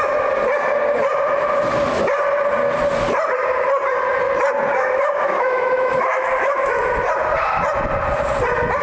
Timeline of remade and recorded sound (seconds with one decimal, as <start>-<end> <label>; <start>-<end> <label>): 0.0-4.7 recorded; 4.7-6.8 remade; 6.8-8.8 recorded